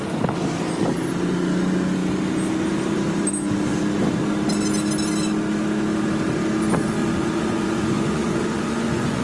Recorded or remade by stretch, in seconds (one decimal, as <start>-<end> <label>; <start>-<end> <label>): 0.0-7.0 recorded; 7.0-9.2 remade